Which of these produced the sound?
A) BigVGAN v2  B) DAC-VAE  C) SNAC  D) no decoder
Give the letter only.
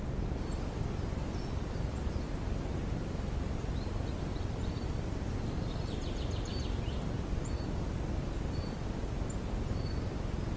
D